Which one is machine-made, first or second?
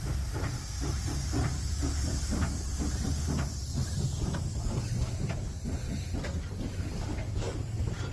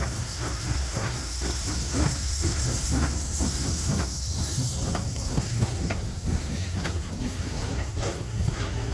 second